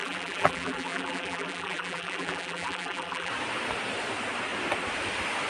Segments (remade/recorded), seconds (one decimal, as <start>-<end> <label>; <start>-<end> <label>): 0.0-3.3 remade; 3.3-5.5 recorded